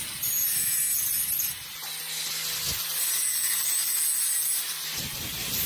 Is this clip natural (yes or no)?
yes